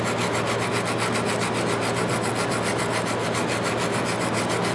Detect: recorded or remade recorded